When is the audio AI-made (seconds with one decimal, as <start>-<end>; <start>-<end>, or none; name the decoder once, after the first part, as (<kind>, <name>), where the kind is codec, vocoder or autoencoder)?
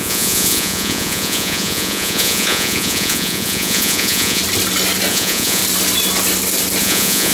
0.0-4.4 (vocoder, Vocos); 5.1-5.6; 6.8-7.3